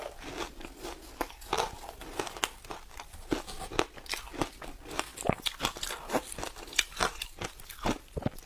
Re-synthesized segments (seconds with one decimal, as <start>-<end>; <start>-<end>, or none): none